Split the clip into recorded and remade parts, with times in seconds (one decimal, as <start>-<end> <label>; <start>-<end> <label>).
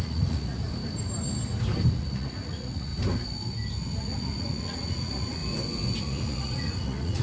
0.0-0.6 remade; 0.6-1.9 recorded; 1.9-2.9 remade; 2.9-4.0 recorded; 4.0-5.4 remade; 5.4-6.0 recorded; 6.0-7.2 remade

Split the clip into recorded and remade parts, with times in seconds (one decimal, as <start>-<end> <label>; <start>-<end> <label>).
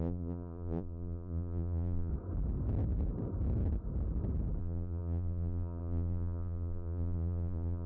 0.0-2.1 remade; 2.1-4.6 recorded; 4.6-7.9 remade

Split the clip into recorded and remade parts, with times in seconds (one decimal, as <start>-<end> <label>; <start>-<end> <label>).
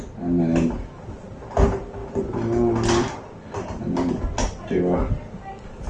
0.0-5.9 recorded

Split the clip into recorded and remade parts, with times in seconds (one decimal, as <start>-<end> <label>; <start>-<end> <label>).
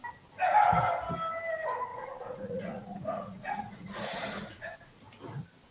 0.0-1.9 recorded; 1.9-5.0 remade; 5.0-5.7 recorded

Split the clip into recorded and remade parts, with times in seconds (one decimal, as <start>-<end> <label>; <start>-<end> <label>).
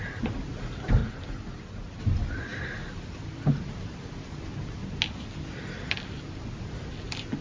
0.0-7.4 recorded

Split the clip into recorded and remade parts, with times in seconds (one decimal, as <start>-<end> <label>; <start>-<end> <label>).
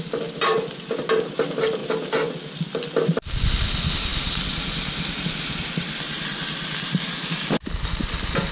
0.0-8.5 recorded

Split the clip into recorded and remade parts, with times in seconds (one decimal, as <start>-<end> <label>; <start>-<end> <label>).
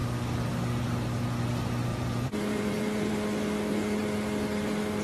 0.0-1.9 recorded; 1.9-3.1 remade; 3.1-5.0 recorded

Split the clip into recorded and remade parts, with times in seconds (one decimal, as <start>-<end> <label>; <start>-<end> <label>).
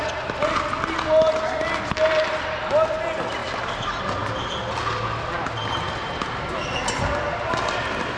0.0-8.2 recorded